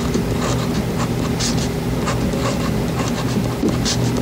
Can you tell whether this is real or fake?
real